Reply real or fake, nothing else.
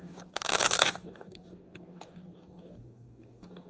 fake